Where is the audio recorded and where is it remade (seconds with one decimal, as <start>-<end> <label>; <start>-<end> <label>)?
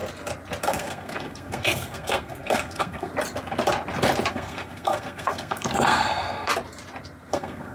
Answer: 0.0-0.6 recorded; 0.6-3.1 remade; 3.1-4.3 recorded; 4.3-6.5 remade; 6.5-7.3 recorded; 7.3-7.7 remade